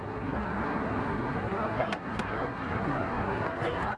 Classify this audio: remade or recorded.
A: remade